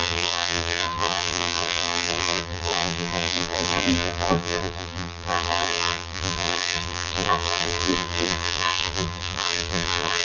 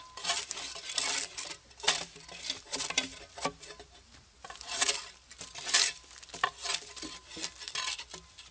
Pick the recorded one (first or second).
second